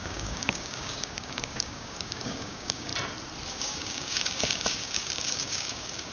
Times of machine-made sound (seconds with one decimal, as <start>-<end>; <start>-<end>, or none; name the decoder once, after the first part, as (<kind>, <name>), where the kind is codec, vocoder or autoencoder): 0.0-2.9 (codec, DAC); 3.5-6.1